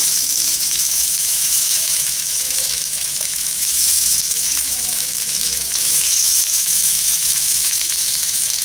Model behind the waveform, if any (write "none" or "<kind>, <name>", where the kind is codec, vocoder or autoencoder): autoencoder, DAC-VAE